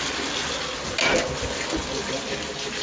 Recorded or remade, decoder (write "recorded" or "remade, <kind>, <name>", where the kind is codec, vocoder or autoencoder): recorded